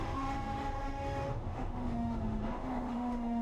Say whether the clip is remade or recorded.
remade